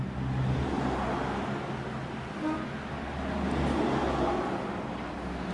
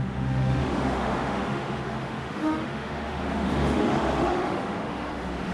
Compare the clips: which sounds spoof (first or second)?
second